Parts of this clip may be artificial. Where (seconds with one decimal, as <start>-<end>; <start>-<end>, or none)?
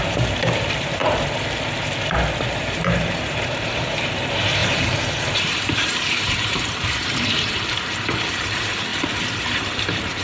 0.0-1.0; 2.5-8.9; 9.4-10.2